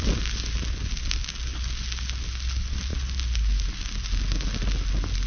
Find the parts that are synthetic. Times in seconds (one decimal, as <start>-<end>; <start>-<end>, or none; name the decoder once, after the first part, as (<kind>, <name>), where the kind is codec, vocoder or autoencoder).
none